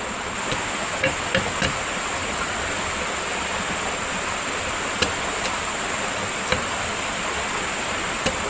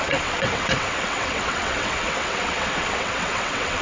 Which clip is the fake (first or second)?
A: second